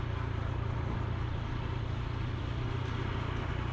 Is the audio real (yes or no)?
yes